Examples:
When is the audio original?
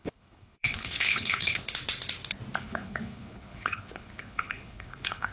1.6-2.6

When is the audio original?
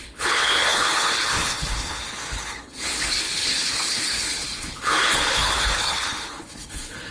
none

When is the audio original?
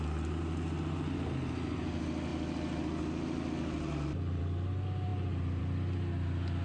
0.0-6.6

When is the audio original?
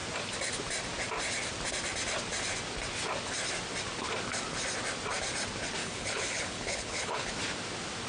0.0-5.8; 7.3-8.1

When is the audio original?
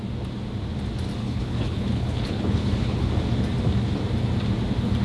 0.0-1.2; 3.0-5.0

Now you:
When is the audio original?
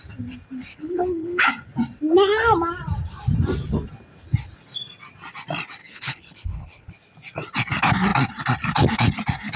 0.0-0.7; 1.5-5.8; 6.9-9.6